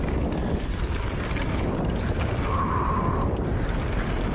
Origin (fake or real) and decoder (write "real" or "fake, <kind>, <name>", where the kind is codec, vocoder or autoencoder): real